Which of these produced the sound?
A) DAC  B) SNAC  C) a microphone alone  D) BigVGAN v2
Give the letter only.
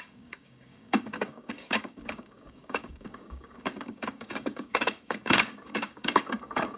A